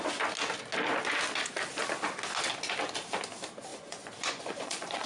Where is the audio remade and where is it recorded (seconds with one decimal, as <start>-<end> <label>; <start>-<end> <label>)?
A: 0.0-3.7 recorded; 3.7-5.1 remade